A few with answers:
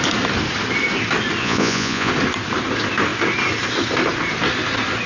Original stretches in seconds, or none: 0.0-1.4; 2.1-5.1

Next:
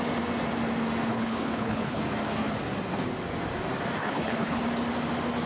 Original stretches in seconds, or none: 0.0-1.1; 2.0-4.0; 4.6-5.5